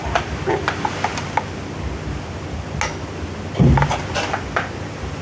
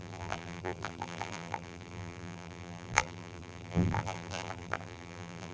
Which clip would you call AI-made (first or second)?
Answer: second